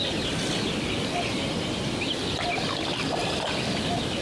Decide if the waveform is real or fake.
real